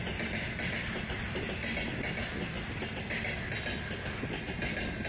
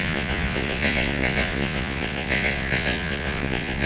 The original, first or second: first